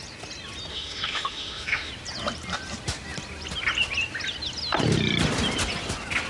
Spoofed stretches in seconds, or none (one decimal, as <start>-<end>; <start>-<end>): 0.7-1.9